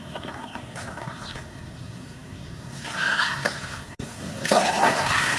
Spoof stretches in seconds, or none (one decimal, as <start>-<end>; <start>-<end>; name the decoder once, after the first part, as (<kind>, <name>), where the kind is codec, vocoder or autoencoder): 0.0-5.4 (codec, SNAC)